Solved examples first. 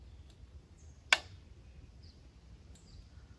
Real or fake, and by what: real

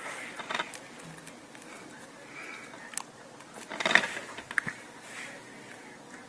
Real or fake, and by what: real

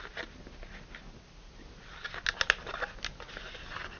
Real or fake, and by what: real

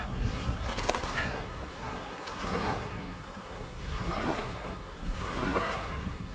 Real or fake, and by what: fake, codec, SNAC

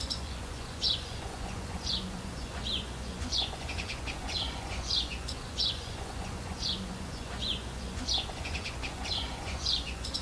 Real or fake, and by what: fake, vocoder, Vocos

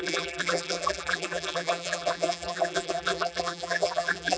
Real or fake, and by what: fake, vocoder, BigVGAN v2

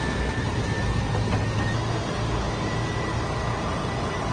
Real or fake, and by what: real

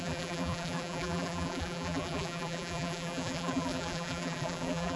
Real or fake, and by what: fake, vocoder, BigVGAN v2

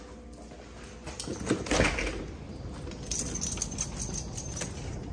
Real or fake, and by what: real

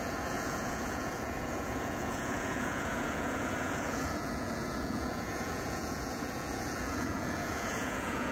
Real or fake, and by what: fake, vocoder, Vocos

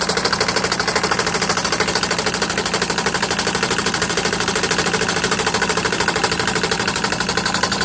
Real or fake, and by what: real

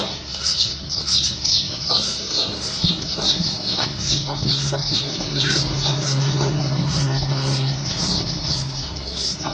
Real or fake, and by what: fake, codec, SNAC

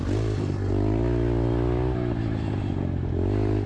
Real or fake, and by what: real